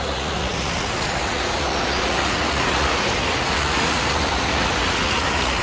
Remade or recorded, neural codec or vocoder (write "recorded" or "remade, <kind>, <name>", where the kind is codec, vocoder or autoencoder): remade, vocoder, Vocos